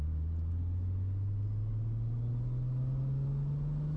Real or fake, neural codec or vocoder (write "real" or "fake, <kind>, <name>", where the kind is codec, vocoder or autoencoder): real